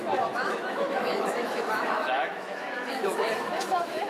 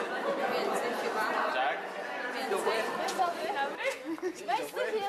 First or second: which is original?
second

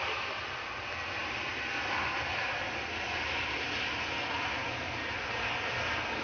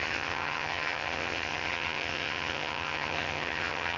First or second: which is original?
first